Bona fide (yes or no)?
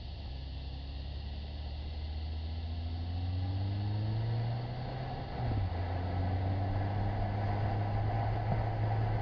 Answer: yes